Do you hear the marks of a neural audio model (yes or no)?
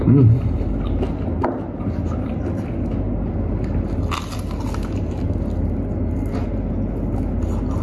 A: no